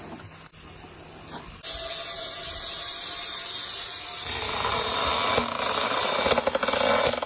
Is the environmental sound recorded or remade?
recorded